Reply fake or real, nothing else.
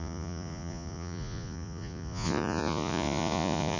fake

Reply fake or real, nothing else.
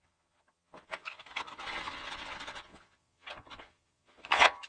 fake